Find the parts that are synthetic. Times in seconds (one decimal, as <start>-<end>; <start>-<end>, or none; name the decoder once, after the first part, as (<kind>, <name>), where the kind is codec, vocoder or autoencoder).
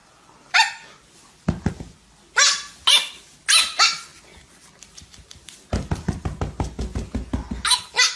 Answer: 0.0-1.7 (vocoder, BigVGAN v2); 4.1-6.4